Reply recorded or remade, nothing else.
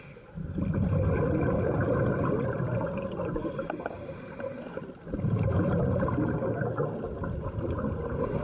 recorded